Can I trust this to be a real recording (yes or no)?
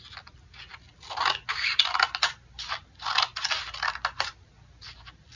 yes